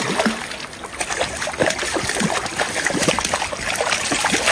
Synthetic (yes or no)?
no